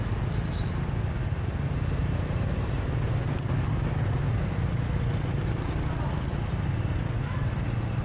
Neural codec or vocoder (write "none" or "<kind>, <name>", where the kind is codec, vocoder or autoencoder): none